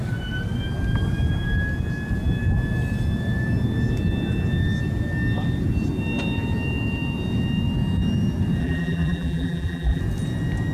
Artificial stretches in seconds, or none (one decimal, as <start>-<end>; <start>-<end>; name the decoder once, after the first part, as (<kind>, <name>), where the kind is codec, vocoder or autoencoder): 8.6-10.0 (vocoder, BigVGAN v2)